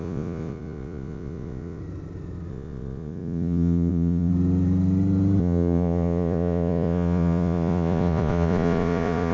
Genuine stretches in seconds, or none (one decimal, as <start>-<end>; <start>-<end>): 1.8-2.5; 4.3-5.4